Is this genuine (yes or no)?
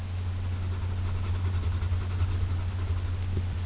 yes